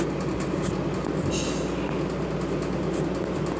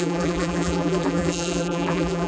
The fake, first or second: second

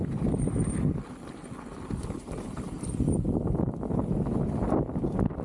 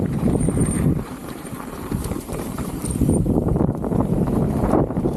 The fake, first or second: second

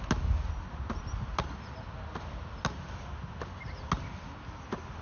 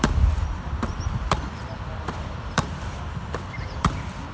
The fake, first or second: second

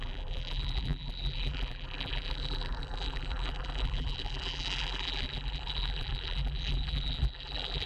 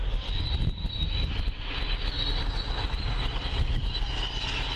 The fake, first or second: first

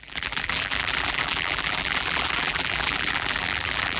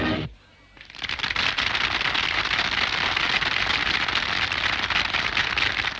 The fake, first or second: first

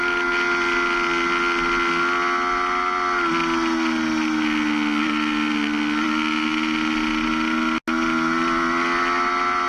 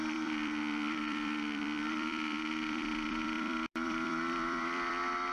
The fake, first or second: second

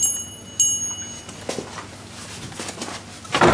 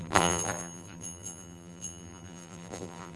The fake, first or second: second